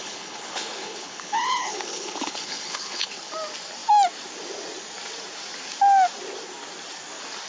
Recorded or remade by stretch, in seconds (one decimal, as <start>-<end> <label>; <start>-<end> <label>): 0.0-3.3 remade; 3.3-7.5 recorded